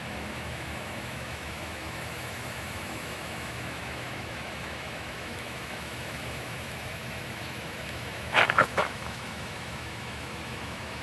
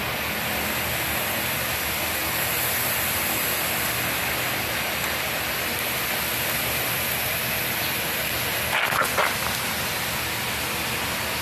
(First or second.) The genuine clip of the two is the second